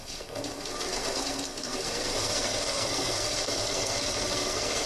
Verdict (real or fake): fake